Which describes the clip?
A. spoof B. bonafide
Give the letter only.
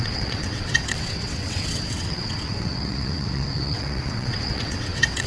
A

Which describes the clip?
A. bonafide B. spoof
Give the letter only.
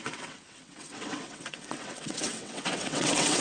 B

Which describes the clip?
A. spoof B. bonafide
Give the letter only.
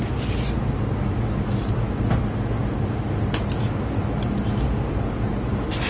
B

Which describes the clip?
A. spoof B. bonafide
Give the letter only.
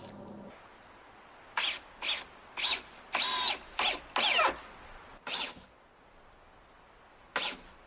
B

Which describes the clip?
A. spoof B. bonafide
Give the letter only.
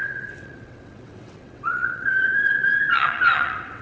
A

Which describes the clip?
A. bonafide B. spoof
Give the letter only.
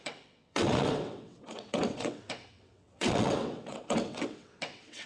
B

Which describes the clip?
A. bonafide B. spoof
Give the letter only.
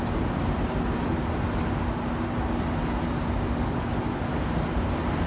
A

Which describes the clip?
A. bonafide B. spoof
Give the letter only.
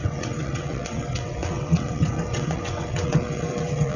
B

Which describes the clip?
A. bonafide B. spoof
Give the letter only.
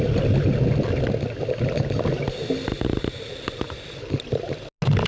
A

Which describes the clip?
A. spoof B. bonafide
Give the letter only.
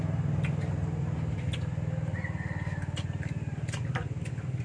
B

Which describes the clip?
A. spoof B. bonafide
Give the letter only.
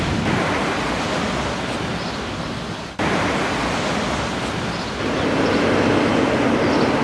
B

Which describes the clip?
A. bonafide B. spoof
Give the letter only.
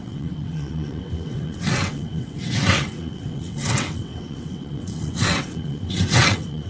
B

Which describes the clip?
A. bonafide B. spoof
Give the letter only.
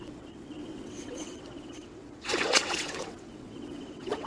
B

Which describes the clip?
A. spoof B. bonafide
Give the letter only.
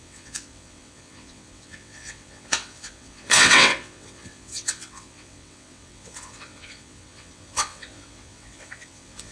A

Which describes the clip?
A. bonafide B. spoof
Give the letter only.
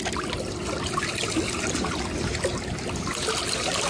A